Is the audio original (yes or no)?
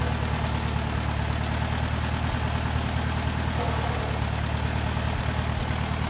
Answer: yes